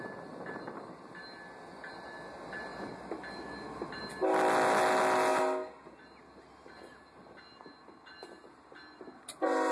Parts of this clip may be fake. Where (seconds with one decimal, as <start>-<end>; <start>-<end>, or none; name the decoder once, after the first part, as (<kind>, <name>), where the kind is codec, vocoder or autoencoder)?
none